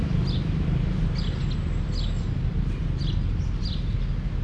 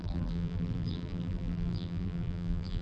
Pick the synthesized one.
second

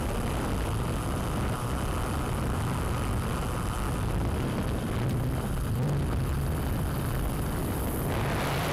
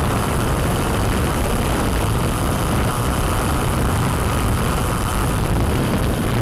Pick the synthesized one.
second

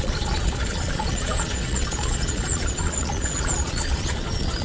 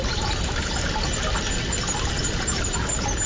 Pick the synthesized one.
first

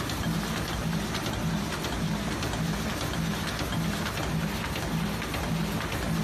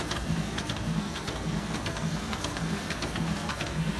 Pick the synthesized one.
second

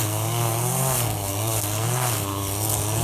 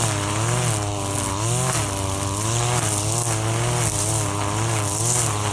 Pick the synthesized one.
first